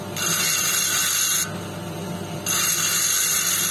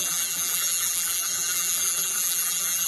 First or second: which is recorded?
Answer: first